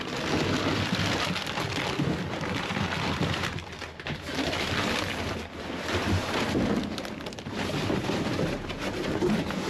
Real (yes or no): yes